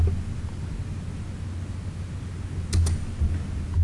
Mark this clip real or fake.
real